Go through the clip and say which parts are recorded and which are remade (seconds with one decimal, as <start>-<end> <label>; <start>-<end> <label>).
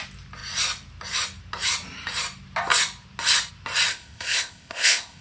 0.0-3.9 recorded; 3.9-5.2 remade